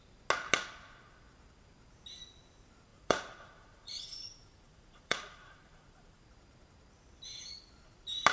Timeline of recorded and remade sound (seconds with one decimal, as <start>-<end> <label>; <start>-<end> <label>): 0.0-2.9 recorded; 2.9-6.2 remade; 6.2-8.3 recorded